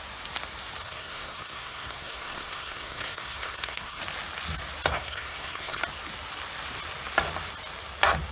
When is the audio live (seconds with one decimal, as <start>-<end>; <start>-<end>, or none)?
0.0-0.8; 4.0-4.9; 5.8-8.3